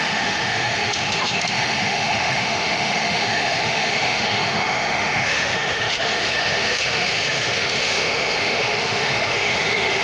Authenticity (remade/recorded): remade